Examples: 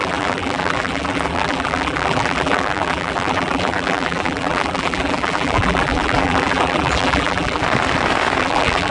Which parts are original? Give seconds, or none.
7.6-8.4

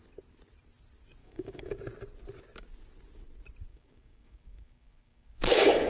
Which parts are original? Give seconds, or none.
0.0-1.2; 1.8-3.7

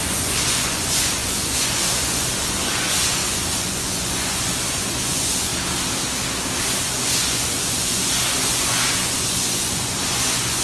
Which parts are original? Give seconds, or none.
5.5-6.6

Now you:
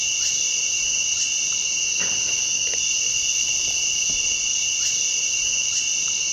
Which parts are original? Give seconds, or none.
0.0-4.5; 5.7-6.3

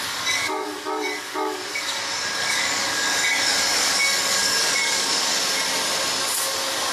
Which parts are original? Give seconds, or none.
5.3-6.2

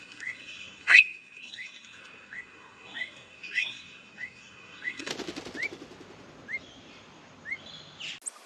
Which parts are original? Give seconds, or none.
5.1-8.5

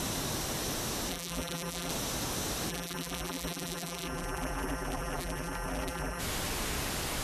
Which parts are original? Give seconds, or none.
0.0-1.1; 1.9-2.7; 6.2-7.2

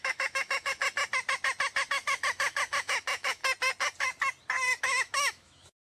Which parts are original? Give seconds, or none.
0.8-1.9; 3.4-4.8